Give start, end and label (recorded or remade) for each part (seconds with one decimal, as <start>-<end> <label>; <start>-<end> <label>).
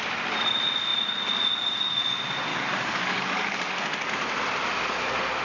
0.0-2.5 recorded; 2.5-4.1 remade; 4.1-5.4 recorded